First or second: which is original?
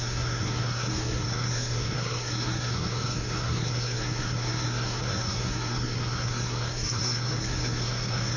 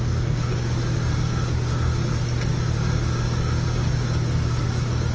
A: second